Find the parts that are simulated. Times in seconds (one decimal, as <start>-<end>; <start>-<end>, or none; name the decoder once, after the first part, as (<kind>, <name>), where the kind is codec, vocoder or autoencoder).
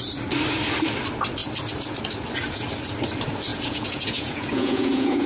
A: 3.5-5.3 (vocoder, Vocos)